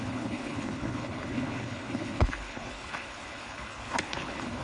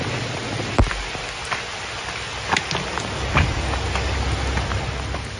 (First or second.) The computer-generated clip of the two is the first